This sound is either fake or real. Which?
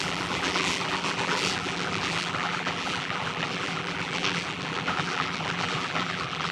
fake